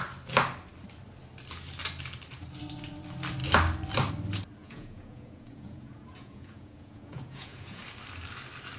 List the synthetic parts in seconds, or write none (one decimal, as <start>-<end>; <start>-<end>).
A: 4.6-7.8